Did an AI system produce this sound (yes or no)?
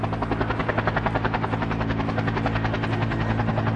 no